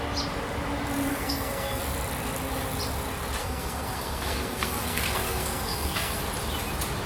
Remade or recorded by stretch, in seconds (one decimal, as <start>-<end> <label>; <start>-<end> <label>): 0.0-1.1 recorded; 1.1-1.8 remade; 1.8-3.4 recorded; 3.4-6.2 remade; 6.2-7.1 recorded